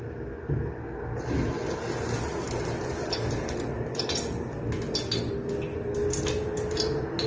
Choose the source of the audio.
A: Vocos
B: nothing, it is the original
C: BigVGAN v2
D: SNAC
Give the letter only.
B